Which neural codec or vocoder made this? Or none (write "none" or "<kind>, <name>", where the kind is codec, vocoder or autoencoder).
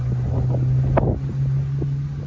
none